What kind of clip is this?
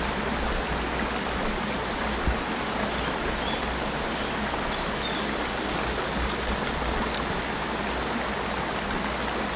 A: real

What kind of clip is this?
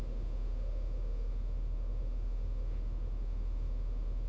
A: fake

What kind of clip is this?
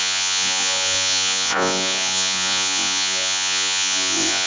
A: fake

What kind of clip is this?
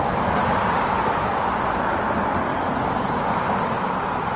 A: real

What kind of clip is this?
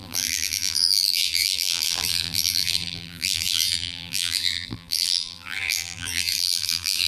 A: fake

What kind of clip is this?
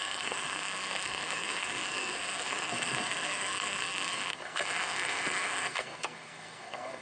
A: fake